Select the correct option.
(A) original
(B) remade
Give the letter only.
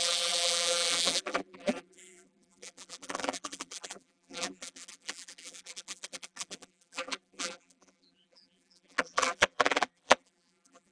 B